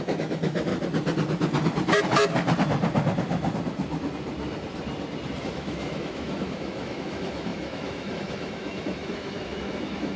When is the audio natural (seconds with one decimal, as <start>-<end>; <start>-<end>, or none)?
0.7-5.4